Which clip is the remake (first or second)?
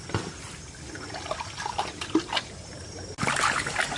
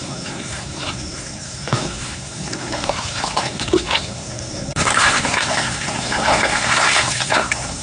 second